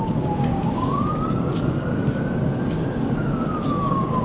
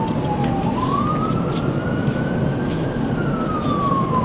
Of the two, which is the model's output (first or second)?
first